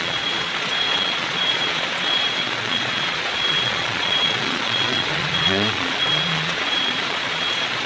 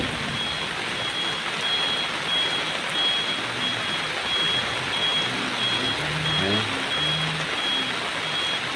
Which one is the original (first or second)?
second